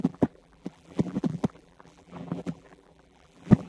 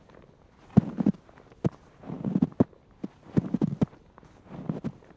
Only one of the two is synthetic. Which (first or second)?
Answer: first